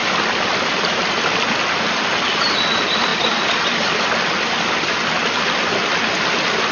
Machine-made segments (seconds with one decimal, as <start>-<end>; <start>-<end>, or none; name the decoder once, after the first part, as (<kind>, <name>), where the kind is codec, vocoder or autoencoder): 0.0-1.3 (vocoder, BigVGAN v2); 3.1-4.3